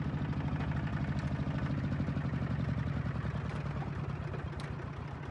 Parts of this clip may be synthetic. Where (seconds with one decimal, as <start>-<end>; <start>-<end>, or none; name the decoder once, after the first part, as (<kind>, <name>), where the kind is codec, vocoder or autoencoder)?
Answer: none